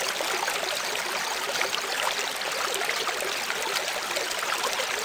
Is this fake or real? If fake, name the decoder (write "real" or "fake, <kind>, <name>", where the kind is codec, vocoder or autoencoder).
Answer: real